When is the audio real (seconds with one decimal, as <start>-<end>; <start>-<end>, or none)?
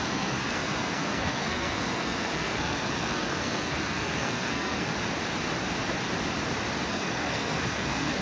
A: 4.9-6.9